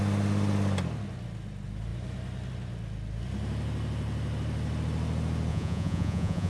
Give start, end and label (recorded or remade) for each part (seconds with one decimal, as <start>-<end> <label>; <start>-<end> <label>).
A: 0.0-5.5 recorded; 5.5-6.5 remade